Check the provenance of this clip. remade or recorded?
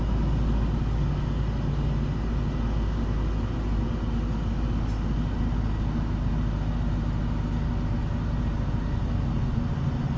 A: recorded